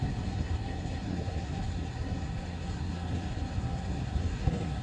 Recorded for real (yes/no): no